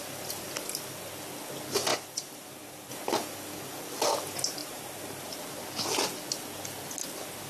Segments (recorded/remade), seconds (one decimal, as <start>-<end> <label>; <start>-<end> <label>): 0.0-1.9 recorded; 1.9-2.9 remade; 2.9-4.6 recorded; 4.6-5.4 remade; 5.4-7.5 recorded